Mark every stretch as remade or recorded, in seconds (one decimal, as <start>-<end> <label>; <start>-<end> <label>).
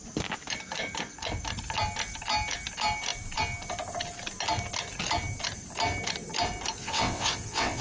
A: 0.0-6.8 recorded; 6.8-7.8 remade